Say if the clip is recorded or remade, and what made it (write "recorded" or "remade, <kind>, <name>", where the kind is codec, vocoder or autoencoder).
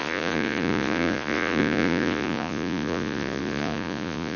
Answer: remade, vocoder, Vocos